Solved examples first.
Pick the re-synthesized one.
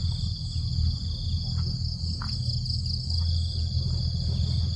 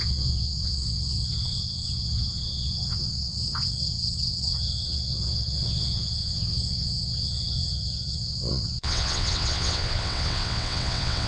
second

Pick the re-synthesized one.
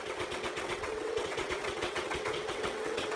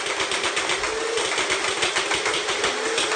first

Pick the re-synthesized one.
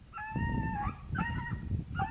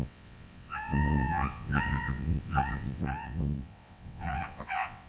second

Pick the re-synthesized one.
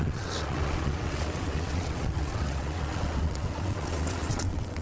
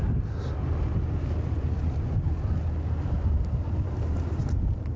first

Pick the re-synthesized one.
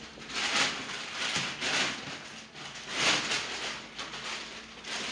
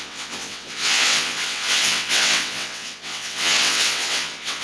second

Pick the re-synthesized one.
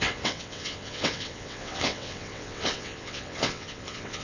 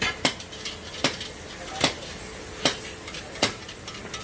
first